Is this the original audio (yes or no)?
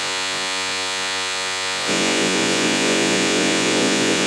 no